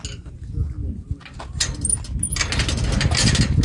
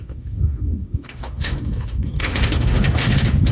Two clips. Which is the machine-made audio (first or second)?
second